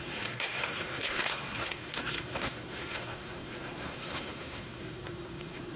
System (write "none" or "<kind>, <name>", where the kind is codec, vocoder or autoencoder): codec, SNAC